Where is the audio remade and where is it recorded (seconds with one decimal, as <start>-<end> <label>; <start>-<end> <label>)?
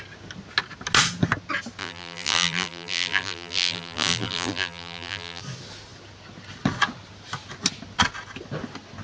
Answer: 0.0-1.8 recorded; 1.8-5.4 remade; 5.4-9.0 recorded